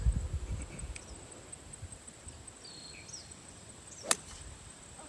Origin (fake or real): real